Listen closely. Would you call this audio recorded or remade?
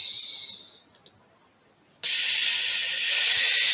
recorded